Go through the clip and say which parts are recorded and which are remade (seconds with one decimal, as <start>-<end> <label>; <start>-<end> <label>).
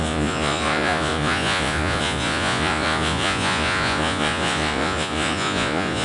0.0-6.0 remade